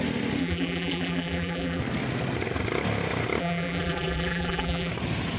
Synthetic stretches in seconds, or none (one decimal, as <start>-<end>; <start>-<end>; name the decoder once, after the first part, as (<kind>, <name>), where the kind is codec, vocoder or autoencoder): 0.4-1.8 (vocoder, BigVGAN v2); 3.4-4.9